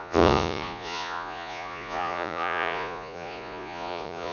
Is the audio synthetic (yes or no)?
yes